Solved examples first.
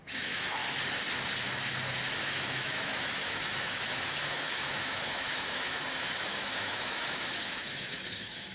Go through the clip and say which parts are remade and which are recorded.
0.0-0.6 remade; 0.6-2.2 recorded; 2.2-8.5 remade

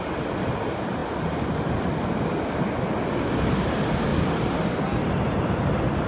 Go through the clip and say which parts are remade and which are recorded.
0.0-6.1 recorded

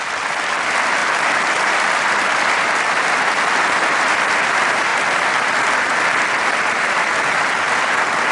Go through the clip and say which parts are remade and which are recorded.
0.0-8.3 recorded